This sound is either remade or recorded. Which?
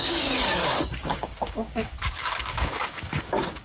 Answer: remade